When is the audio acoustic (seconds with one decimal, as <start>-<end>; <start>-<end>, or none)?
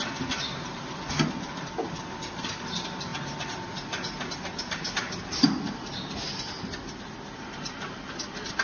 0.0-8.6